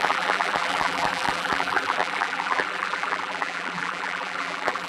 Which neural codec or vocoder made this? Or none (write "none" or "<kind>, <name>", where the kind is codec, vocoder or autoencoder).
vocoder, BigVGAN v2